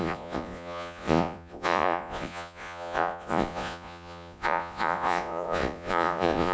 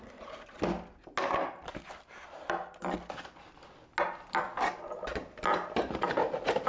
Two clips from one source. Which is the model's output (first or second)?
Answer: first